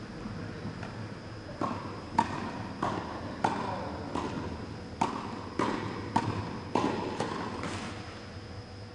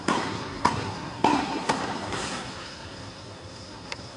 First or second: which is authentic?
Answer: first